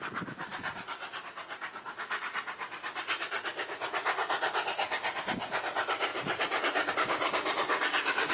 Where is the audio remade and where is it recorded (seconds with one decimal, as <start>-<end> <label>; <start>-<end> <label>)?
0.0-8.3 recorded

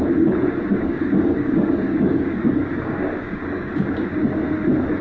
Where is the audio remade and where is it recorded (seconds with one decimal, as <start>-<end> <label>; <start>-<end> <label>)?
0.0-0.7 recorded; 0.7-3.7 remade; 3.7-5.0 recorded

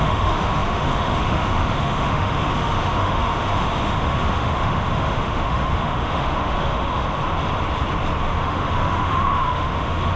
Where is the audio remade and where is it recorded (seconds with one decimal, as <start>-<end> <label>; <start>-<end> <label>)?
0.0-7.0 remade; 7.0-8.2 recorded; 8.2-10.2 remade

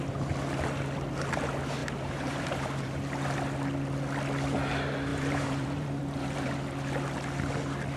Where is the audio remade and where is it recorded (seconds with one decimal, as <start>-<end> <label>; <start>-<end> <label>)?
0.0-1.8 recorded; 1.8-2.9 remade; 2.9-5.1 recorded; 5.1-6.5 remade; 6.5-8.0 recorded

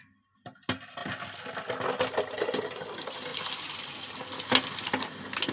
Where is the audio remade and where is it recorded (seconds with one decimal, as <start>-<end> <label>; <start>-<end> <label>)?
0.0-3.3 recorded; 3.3-4.1 remade; 4.1-5.5 recorded

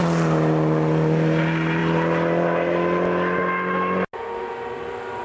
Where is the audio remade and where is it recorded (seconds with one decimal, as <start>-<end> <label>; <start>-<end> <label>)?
0.0-5.2 recorded